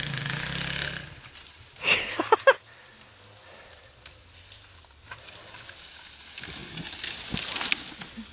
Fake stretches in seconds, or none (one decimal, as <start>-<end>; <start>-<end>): none